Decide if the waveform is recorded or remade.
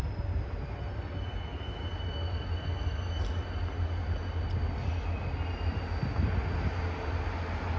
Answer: recorded